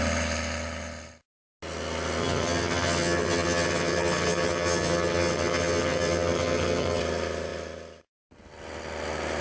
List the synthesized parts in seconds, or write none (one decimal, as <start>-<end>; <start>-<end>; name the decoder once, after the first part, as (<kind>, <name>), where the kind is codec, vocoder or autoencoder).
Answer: 2.2-7.0 (vocoder, HiFi-GAN)